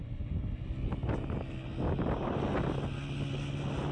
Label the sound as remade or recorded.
recorded